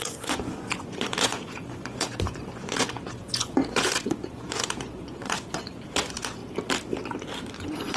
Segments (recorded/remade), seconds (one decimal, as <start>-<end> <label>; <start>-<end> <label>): 0.0-6.4 remade; 6.4-7.5 recorded; 7.5-8.0 remade